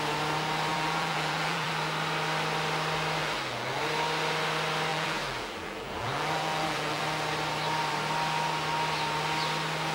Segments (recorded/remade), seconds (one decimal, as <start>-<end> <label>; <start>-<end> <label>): 0.0-0.7 recorded; 0.7-1.7 remade; 1.7-3.2 recorded; 3.2-3.8 remade; 3.8-4.9 recorded; 4.9-7.0 remade; 7.0-9.9 recorded